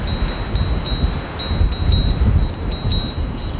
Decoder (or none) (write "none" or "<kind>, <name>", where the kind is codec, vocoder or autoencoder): none